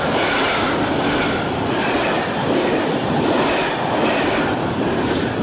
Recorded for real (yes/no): yes